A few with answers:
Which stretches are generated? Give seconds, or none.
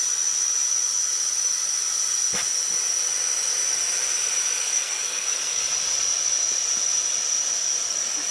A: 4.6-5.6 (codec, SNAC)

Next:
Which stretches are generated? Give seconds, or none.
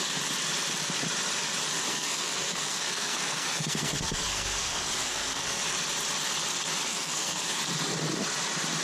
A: 1.9-5.6 (codec, SNAC); 6.9-7.6